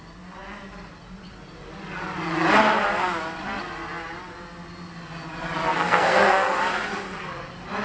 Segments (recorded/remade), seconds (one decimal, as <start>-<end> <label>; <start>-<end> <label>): 0.0-5.7 recorded; 5.7-6.6 remade; 6.6-7.8 recorded